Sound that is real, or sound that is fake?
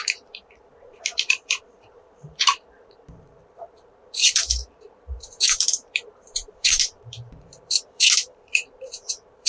fake